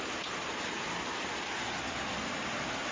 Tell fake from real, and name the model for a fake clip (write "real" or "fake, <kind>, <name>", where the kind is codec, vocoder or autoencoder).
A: real